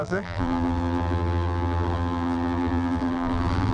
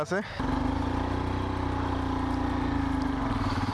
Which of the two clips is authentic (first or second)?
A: second